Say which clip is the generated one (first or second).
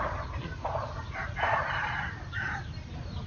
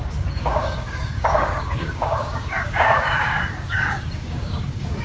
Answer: second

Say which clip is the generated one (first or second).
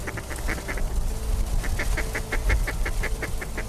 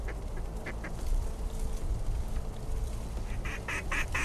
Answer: second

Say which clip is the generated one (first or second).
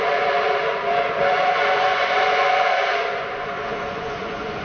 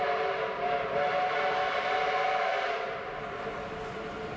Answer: first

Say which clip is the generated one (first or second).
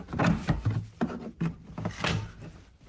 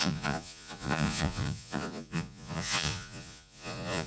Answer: second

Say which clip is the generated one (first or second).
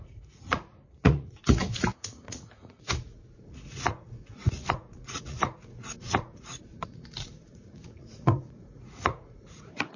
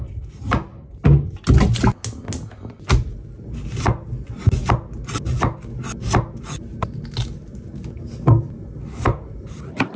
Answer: first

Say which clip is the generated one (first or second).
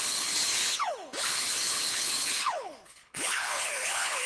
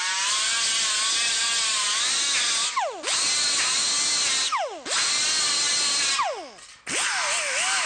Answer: first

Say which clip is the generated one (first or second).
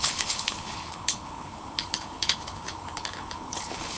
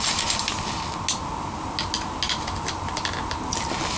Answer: first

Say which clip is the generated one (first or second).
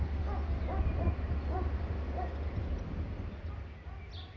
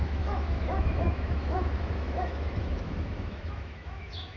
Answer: second